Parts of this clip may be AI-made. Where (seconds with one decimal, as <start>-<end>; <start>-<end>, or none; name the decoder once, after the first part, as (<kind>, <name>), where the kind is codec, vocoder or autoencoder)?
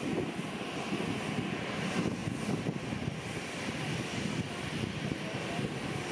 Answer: none